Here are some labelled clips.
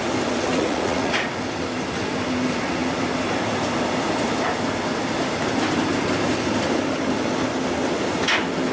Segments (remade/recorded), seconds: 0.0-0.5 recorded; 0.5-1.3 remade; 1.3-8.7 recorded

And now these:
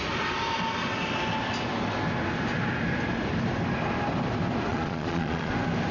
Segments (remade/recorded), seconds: 0.0-4.7 recorded; 4.7-5.5 remade; 5.5-5.9 recorded

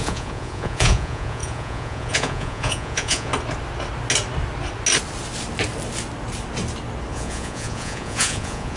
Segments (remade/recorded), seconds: 0.0-3.3 remade; 3.3-7.1 recorded; 7.1-8.8 remade

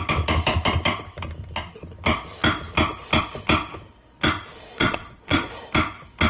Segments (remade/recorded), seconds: 0.0-4.5 recorded; 4.5-5.5 remade; 5.5-6.3 recorded

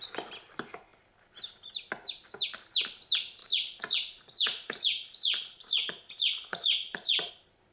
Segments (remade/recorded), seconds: 0.0-3.4 recorded; 3.4-7.3 remade; 7.3-7.7 recorded